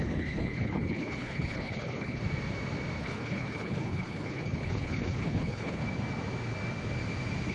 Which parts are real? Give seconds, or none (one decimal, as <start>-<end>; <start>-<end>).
2.2-3.0; 5.8-7.5